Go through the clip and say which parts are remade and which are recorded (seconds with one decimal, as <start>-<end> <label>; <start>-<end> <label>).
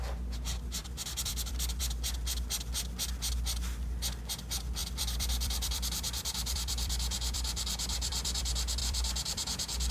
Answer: 0.0-0.8 recorded; 0.8-1.8 remade; 1.8-4.8 recorded; 4.8-8.4 remade; 8.4-8.8 recorded; 8.8-9.9 remade